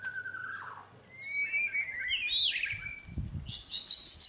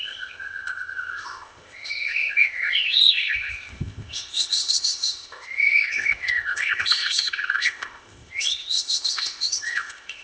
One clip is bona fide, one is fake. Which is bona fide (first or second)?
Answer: first